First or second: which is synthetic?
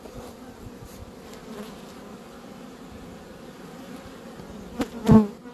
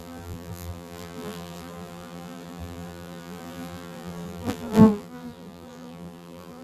second